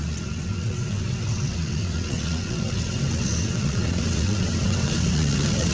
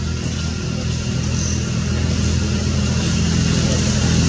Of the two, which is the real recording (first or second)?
second